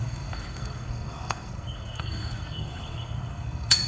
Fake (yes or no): yes